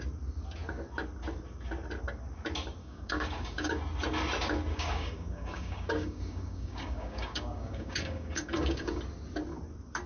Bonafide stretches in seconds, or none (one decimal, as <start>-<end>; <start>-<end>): 0.0-2.8; 3.8-4.7; 9.0-10.1